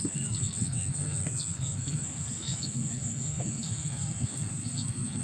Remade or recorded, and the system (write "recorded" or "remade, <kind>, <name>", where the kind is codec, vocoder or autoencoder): remade, codec, SNAC